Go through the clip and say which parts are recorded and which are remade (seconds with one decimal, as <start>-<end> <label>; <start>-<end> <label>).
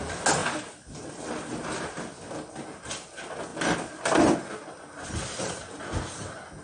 0.0-6.6 recorded